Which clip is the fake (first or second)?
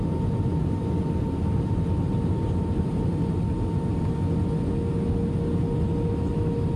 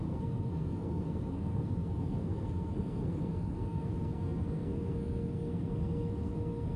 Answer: second